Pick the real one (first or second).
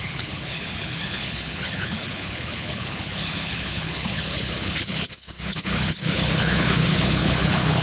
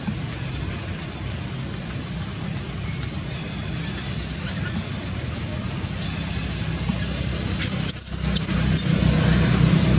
second